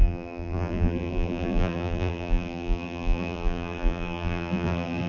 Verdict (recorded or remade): remade